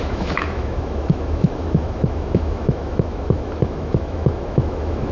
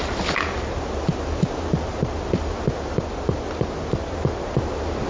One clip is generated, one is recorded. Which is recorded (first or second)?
second